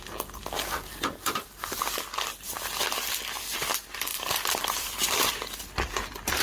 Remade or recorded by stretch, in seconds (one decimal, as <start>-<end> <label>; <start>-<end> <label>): 0.0-4.1 recorded; 4.1-5.3 remade; 5.3-6.4 recorded